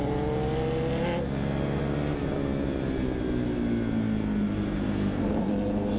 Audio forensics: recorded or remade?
recorded